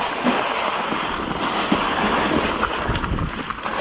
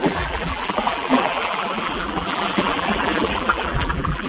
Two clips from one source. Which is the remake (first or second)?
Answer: second